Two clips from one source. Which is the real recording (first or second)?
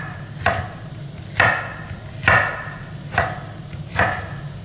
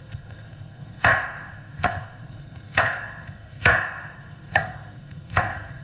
first